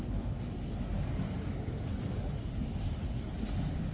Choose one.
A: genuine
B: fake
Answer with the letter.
B